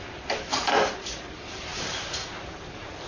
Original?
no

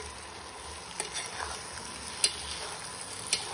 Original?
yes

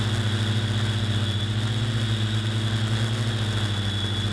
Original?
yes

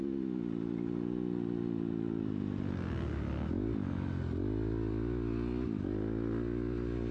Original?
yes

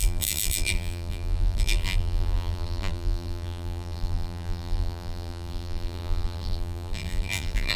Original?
no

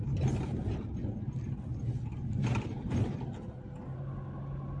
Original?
yes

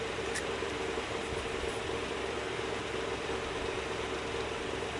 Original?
no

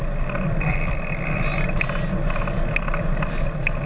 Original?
yes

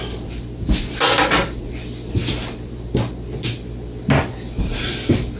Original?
yes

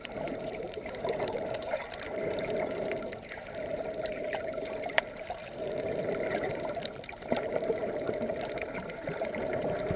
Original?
no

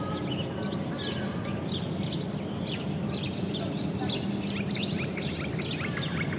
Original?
yes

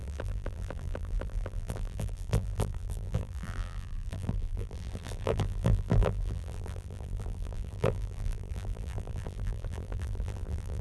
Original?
no